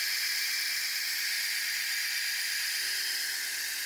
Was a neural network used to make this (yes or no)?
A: no